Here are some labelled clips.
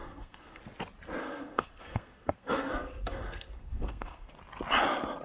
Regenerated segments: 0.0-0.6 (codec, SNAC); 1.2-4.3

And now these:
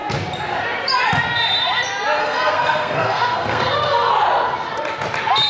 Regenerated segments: 2.2-4.1 (codec, SNAC)

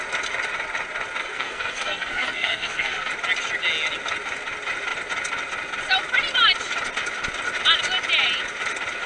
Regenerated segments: 1.2-3.1 (codec, SNAC)

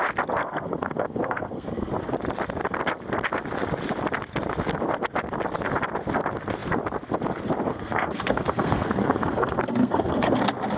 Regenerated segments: 0.4-1.9 (codec, SNAC); 7.7-10.4

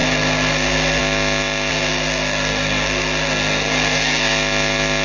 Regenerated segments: 0.0-1.0 (codec, SNAC); 1.7-4.2